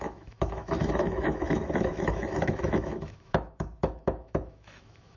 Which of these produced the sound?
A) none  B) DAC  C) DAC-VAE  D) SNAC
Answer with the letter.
C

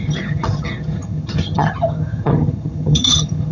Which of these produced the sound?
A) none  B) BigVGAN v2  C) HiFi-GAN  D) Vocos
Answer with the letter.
C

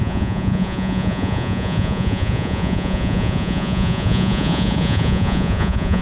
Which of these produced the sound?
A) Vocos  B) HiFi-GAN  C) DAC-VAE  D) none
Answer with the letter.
A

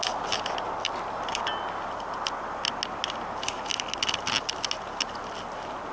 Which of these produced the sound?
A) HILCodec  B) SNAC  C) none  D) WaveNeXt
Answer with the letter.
C